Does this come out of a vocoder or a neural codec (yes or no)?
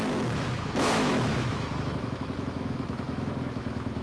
yes